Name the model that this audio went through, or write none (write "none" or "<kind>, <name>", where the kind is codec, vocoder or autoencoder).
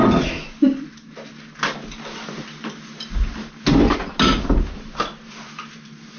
none